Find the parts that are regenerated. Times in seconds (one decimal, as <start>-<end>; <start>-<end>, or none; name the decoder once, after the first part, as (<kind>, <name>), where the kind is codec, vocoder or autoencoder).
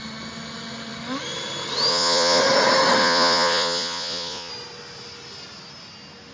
1.9-2.4 (vocoder, Vocos); 3.0-4.5